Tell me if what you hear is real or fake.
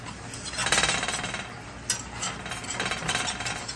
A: real